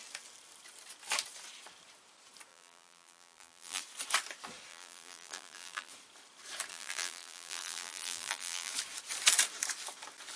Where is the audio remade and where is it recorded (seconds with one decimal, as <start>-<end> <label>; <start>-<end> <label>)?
0.0-2.5 recorded; 2.5-3.8 remade; 3.8-4.7 recorded; 4.7-5.9 remade; 5.9-6.7 recorded; 6.7-8.7 remade; 8.7-10.4 recorded